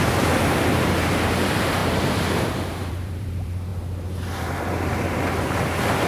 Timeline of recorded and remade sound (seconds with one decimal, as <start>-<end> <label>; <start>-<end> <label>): 0.0-3.7 remade; 3.7-4.4 recorded; 4.4-6.1 remade